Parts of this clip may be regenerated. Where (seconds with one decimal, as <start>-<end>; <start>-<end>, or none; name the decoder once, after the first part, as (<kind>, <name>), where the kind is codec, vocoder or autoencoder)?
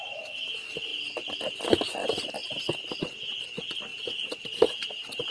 none